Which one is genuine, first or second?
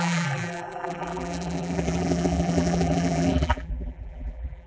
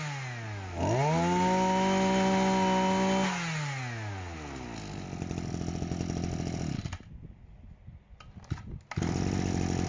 second